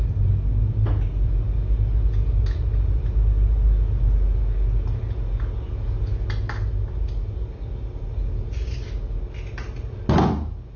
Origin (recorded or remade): recorded